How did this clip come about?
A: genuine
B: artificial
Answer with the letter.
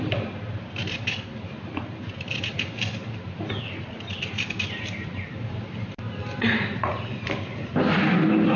A